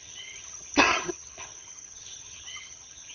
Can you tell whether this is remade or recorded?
remade